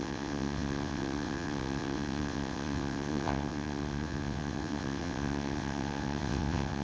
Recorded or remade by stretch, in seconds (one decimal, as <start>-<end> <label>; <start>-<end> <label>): 0.0-6.8 remade